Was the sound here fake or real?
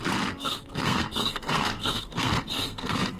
fake